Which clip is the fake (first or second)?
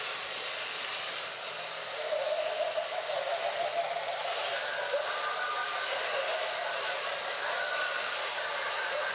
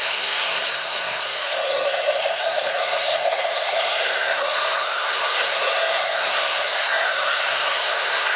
second